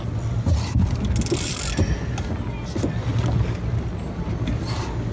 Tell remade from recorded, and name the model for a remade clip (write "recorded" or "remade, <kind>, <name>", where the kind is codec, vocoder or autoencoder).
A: recorded